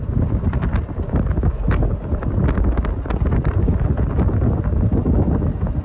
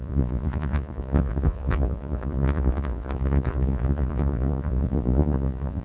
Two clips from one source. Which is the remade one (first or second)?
second